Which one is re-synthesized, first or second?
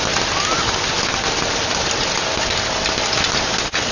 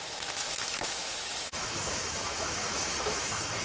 second